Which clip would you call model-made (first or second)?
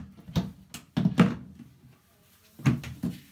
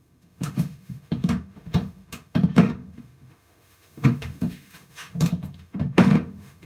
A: second